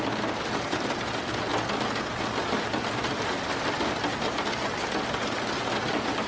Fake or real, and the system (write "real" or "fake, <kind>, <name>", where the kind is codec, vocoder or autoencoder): real